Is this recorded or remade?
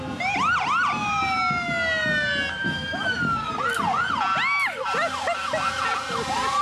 recorded